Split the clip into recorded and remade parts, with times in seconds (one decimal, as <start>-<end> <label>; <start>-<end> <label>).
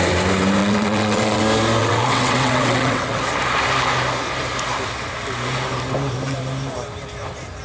0.0-0.6 recorded; 0.6-1.4 remade; 1.4-1.8 recorded; 1.8-3.2 remade; 3.2-7.6 recorded